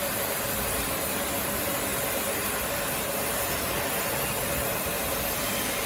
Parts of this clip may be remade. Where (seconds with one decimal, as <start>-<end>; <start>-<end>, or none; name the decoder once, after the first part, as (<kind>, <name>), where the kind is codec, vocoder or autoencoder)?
none